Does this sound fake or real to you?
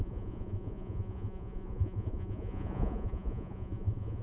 fake